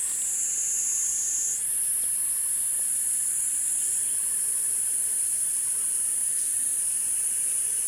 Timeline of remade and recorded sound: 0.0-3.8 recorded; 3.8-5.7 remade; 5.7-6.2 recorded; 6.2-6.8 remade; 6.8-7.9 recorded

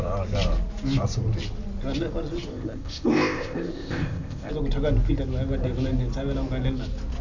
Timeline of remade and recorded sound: 0.0-2.5 recorded; 2.5-4.5 remade; 4.5-7.2 recorded

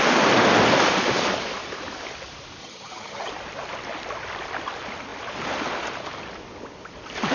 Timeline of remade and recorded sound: 0.0-2.6 recorded; 2.6-3.3 remade; 3.3-7.3 recorded

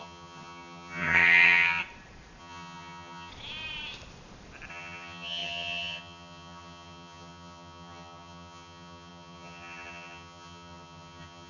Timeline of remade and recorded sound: 0.0-1.8 remade; 1.8-2.4 recorded; 2.4-3.3 remade; 3.3-4.7 recorded; 4.7-11.5 remade

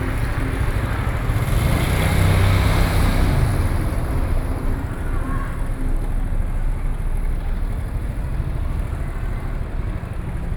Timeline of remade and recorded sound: 0.0-10.6 recorded

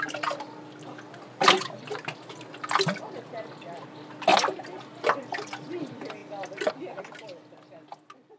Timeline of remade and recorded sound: 0.0-8.4 recorded

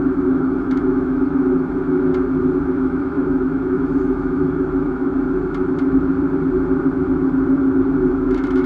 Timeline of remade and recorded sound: 0.0-2.1 remade; 2.1-2.7 recorded; 2.7-5.1 remade; 5.1-8.1 recorded; 8.1-8.7 remade

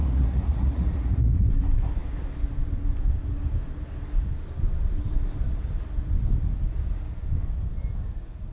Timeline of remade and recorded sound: 0.0-1.4 remade; 1.4-8.5 recorded